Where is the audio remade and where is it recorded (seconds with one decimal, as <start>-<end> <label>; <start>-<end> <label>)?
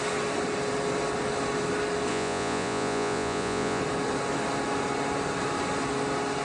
0.0-2.1 recorded; 2.1-3.8 remade; 3.8-6.4 recorded